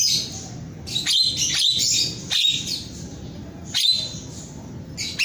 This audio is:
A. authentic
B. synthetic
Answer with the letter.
A